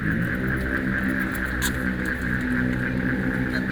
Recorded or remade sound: recorded